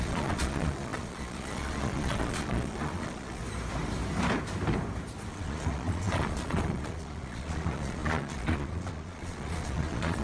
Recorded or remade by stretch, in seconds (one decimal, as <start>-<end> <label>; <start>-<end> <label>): 0.0-3.4 remade; 3.4-5.3 recorded; 5.3-10.2 remade